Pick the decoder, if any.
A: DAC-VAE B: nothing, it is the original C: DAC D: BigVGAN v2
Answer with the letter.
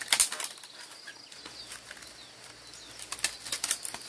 B